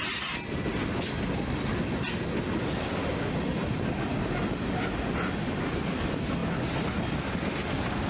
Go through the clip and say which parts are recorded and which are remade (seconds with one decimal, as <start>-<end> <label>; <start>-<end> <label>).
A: 0.0-8.1 recorded